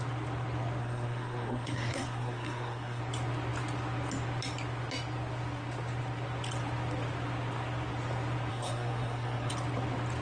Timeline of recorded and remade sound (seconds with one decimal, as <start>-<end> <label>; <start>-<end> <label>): 0.0-0.8 recorded; 0.8-3.0 remade; 3.0-8.5 recorded; 8.5-9.5 remade; 9.5-10.2 recorded